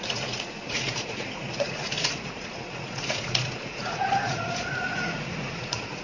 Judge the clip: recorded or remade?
remade